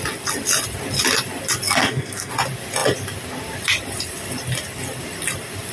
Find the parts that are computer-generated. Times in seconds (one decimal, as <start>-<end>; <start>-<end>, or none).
1.8-2.3